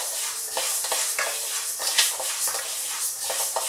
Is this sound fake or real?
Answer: fake